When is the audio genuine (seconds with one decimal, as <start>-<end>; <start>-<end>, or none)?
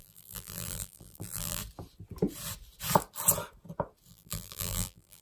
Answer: 1.6-4.1